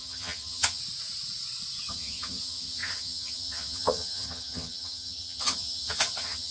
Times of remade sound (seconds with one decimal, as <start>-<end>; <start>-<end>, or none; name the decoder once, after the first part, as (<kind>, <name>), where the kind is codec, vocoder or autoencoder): 0.0-0.8 (vocoder, HiFi-GAN); 1.9-6.5

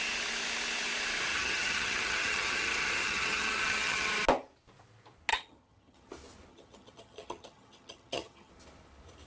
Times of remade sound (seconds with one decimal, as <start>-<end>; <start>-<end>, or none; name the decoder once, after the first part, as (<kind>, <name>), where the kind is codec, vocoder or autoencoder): 1.3-4.1 (vocoder, HiFi-GAN); 5.3-6.1; 6.5-8.5

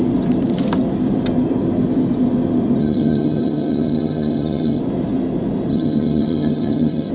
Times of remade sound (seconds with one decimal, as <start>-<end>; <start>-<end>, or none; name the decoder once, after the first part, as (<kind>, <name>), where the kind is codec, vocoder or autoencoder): 2.8-4.8 (vocoder, HiFi-GAN); 5.7-7.1